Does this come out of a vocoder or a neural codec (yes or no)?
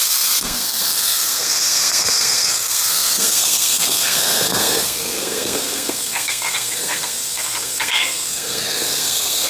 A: yes